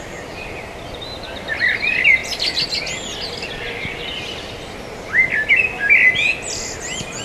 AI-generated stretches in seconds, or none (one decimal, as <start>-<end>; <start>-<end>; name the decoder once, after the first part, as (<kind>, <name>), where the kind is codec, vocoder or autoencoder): none